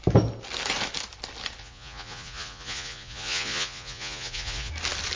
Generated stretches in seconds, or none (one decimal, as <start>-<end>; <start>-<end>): 1.6-4.7